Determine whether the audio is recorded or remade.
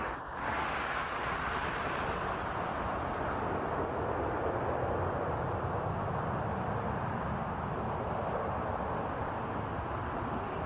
recorded